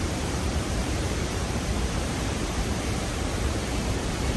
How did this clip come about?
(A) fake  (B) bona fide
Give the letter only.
A